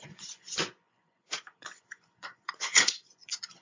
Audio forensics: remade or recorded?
remade